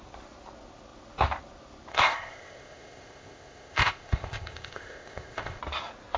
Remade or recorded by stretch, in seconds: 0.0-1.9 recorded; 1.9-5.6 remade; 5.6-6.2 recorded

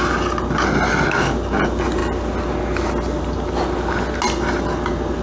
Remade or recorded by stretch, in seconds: 0.0-5.2 recorded

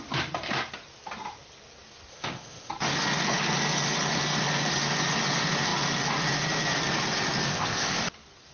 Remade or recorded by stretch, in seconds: 0.0-2.1 recorded; 2.1-2.7 remade; 2.7-7.5 recorded; 7.5-8.0 remade; 8.0-8.5 recorded

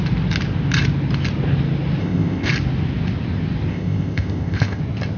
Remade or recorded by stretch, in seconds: 0.0-2.0 recorded; 2.0-2.5 remade; 2.5-3.7 recorded; 3.7-4.8 remade; 4.8-5.2 recorded

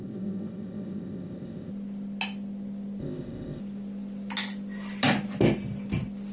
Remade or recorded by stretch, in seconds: 0.0-1.7 remade; 1.7-3.0 recorded; 3.0-3.6 remade; 3.6-6.3 recorded

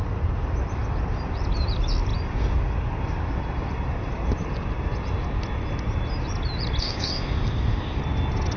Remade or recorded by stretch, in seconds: 0.0-6.8 recorded; 6.8-8.0 remade; 8.0-8.6 recorded

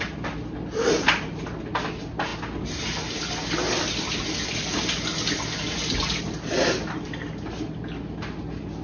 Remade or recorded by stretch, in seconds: 0.0-8.8 recorded